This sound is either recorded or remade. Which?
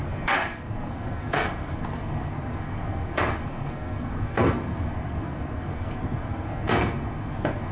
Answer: remade